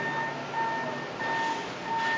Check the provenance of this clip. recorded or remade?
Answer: recorded